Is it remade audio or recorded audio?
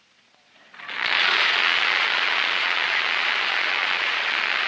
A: remade